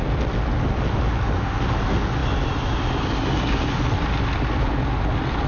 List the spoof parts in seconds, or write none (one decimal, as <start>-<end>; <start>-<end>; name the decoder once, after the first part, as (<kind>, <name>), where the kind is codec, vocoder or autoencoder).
none